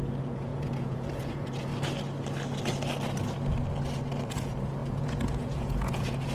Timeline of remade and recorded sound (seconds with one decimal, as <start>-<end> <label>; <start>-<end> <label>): 0.0-1.7 remade; 1.7-4.3 recorded; 4.3-6.3 remade